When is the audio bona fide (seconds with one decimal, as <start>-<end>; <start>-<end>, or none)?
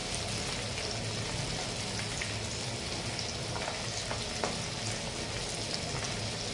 0.0-6.5